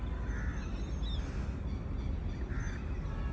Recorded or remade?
recorded